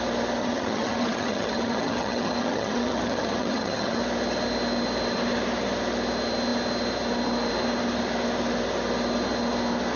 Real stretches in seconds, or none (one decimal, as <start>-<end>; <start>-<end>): 0.0-0.4; 4.0-10.0